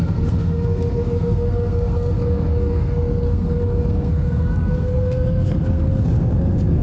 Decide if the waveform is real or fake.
fake